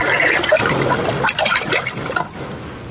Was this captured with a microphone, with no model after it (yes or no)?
yes